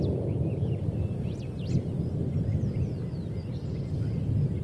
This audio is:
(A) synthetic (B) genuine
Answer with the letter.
B